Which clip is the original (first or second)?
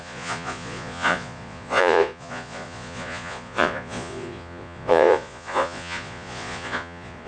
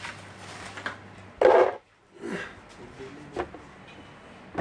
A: second